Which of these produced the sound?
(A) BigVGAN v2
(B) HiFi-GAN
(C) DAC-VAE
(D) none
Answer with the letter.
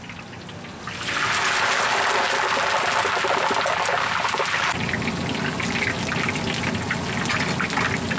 D